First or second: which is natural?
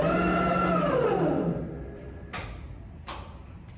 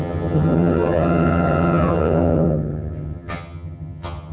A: first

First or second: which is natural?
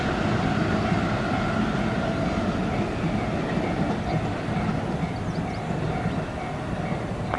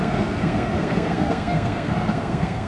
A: first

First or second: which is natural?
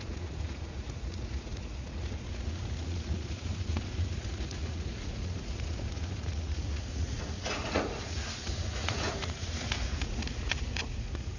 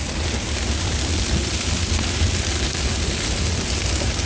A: second